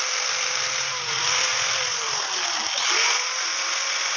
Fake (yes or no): no